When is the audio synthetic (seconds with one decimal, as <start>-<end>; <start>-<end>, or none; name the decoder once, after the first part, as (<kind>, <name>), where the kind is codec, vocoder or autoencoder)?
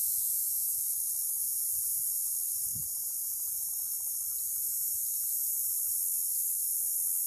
0.0-0.8 (vocoder, Vocos); 1.4-2.1; 2.7-3.7; 4.3-5.7